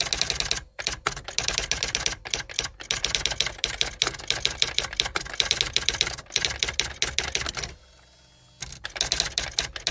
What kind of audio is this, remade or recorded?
recorded